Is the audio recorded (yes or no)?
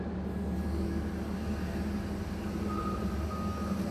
yes